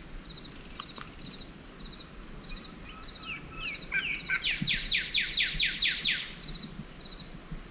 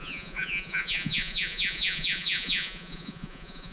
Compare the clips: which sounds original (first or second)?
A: first